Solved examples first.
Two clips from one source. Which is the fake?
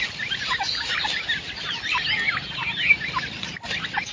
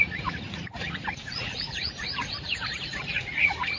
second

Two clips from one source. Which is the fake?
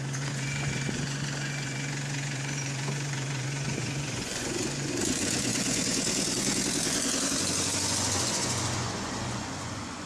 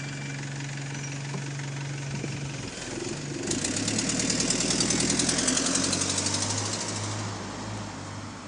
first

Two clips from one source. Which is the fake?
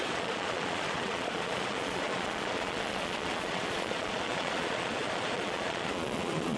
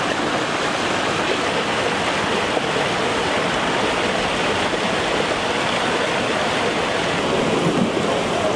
first